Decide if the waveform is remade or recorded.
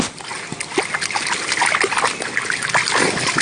recorded